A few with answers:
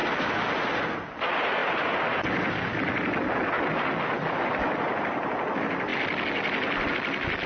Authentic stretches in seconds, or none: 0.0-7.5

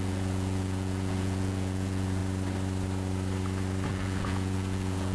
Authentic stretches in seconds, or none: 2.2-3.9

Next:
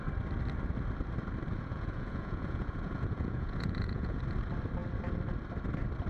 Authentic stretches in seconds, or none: 0.0-1.5; 4.2-6.1

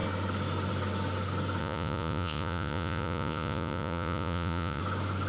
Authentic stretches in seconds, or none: 0.0-1.6; 4.8-5.3

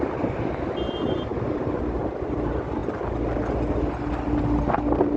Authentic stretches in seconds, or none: 0.0-5.2

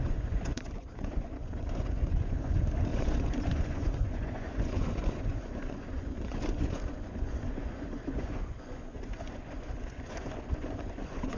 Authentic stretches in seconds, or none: none

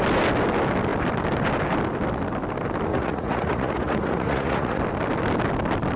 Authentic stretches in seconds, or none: 0.0-2.9; 4.8-6.0